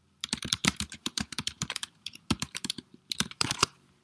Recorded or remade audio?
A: remade